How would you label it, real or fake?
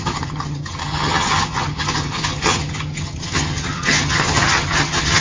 fake